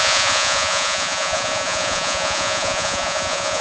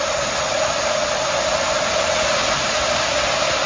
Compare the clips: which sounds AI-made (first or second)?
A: first